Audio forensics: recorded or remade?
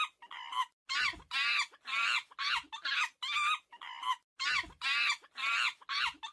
recorded